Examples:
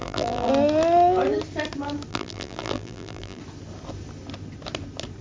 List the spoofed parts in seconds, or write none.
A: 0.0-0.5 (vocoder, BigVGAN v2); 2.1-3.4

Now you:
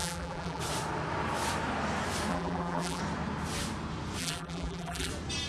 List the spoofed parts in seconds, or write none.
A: 0.0-0.6 (vocoder, BigVGAN v2); 2.3-3.0; 4.2-5.1

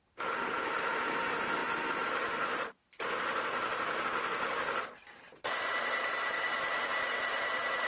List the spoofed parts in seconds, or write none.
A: none

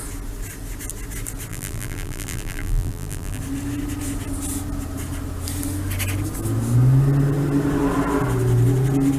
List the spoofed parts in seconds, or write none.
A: 1.5-3.4 (vocoder, BigVGAN v2)

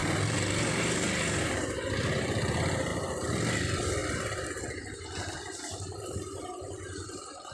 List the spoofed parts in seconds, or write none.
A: 0.8-2.9 (vocoder, BigVGAN v2); 3.5-4.0; 4.6-7.5

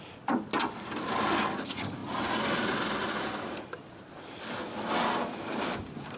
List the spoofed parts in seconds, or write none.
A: 0.0-6.2 (vocoder, BigVGAN v2)